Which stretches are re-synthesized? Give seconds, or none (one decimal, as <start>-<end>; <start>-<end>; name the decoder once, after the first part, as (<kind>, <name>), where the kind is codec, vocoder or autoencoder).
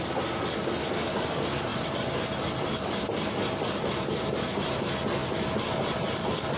none